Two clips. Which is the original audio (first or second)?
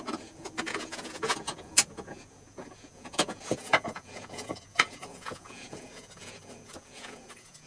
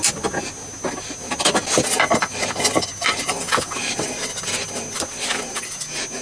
second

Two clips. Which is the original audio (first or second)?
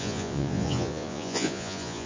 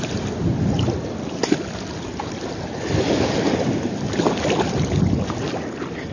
second